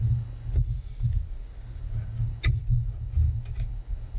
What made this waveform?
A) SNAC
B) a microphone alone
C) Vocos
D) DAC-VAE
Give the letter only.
B